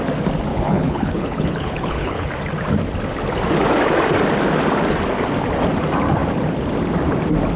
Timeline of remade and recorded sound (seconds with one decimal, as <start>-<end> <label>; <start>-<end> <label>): 0.0-0.5 recorded; 0.5-2.3 remade; 2.3-7.6 recorded